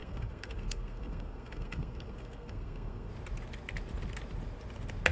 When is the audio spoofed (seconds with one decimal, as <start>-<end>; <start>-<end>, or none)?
0.0-3.1